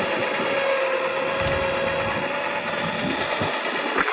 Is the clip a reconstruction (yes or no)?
no